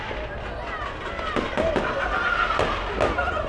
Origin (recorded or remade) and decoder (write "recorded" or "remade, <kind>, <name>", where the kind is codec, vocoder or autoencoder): recorded